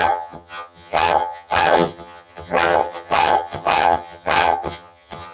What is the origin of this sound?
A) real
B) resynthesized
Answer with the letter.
B